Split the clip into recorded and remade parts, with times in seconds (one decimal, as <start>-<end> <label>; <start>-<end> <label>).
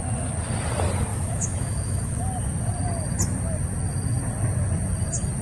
0.0-1.1 recorded; 1.1-2.2 remade; 2.2-5.4 recorded